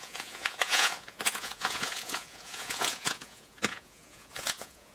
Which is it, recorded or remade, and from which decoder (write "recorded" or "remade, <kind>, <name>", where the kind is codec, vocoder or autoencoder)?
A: remade, vocoder, Vocos